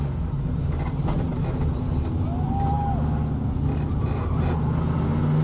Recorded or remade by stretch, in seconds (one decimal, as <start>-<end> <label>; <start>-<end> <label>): 0.0-5.4 recorded